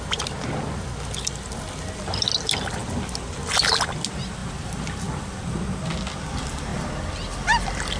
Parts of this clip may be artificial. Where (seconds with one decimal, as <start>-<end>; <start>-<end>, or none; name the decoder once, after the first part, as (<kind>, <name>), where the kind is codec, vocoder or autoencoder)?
4.4-5.4 (vocoder, BigVGAN v2); 6.7-8.0